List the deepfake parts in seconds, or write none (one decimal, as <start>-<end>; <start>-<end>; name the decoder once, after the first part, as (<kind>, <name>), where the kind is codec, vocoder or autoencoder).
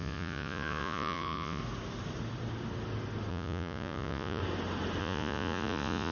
0.0-1.6 (vocoder, Vocos); 3.3-4.4; 5.0-6.1